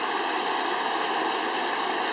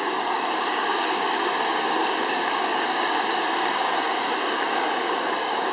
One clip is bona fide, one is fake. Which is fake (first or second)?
second